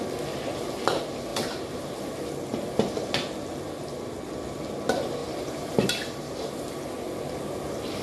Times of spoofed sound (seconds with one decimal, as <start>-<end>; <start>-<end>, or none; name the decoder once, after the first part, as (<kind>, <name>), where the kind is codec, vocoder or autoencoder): 1.3-2.1 (vocoder, BigVGAN v2); 5.2-6.7